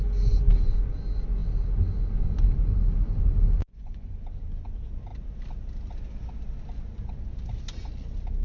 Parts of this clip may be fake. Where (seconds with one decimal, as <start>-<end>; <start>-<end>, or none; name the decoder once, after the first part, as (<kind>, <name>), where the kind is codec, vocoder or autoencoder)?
3.6-4.1 (vocoder, Vocos)